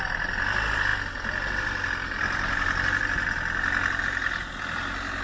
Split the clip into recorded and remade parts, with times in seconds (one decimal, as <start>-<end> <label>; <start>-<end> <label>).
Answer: 0.0-5.2 recorded